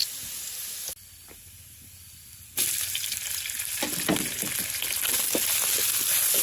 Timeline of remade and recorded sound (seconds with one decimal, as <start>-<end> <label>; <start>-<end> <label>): 0.0-6.4 recorded